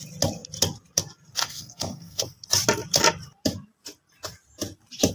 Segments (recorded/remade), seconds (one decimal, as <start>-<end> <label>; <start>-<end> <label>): 0.0-1.4 recorded; 1.4-2.2 remade; 2.2-5.1 recorded